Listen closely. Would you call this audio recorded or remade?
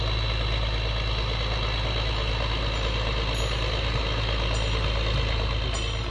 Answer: recorded